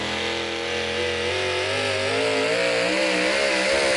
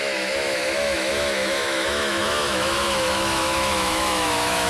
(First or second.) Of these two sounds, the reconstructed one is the second